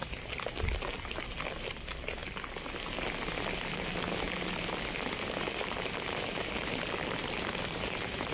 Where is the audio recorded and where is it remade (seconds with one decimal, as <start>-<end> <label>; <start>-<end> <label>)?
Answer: 0.0-8.3 recorded